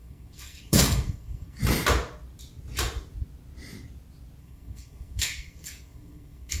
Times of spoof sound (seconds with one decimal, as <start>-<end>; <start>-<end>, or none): 0.0-1.6; 4.4-6.6